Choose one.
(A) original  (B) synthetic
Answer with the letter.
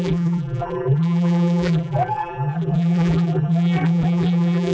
B